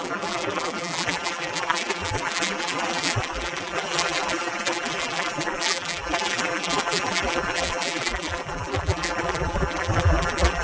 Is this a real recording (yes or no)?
no